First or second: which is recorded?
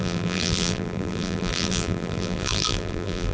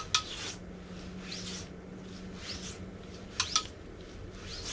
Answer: second